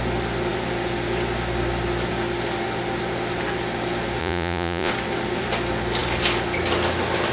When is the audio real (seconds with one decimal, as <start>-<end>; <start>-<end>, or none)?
0.0-4.2; 4.9-7.3